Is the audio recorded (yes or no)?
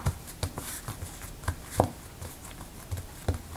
yes